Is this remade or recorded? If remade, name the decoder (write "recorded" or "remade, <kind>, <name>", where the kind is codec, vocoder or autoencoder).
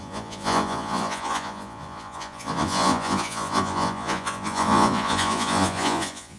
remade, vocoder, Vocos